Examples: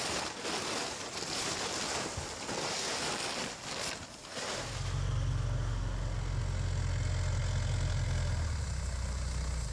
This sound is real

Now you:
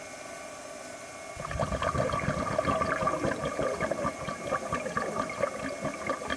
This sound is real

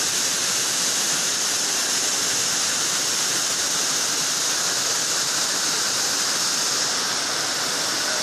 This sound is real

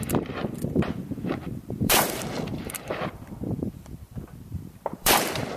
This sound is fake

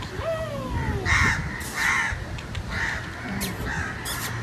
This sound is real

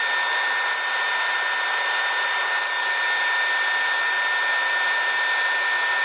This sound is real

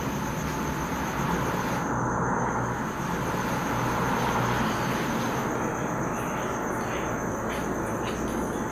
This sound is real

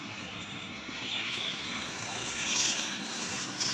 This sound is fake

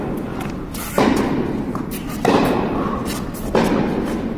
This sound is real